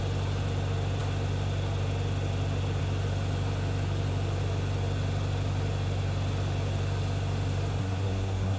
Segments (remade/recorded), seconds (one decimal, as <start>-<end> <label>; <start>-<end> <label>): 0.0-7.8 recorded; 7.8-8.6 remade